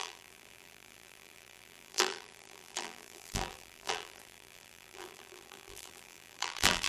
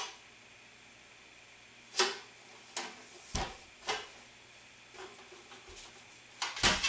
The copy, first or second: first